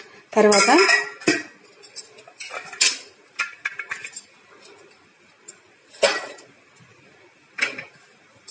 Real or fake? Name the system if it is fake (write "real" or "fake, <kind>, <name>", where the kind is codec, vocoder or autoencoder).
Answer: real